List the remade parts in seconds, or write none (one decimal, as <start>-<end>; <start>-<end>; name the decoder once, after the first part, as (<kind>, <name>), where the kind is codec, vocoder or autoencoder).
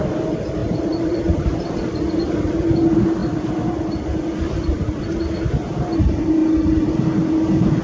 0.6-1.7 (vocoder, BigVGAN v2); 3.2-5.0